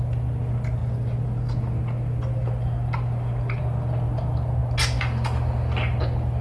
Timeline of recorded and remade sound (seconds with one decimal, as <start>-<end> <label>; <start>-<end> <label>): 0.0-6.4 recorded

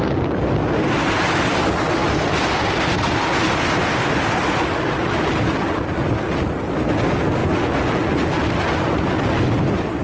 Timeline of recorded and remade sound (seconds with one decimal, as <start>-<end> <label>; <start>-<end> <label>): 0.0-10.0 recorded

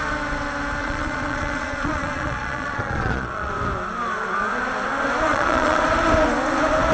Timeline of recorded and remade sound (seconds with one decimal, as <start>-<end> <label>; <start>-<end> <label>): 0.0-0.8 recorded; 0.8-3.5 remade; 3.5-5.3 recorded; 5.3-5.8 remade; 5.8-6.9 recorded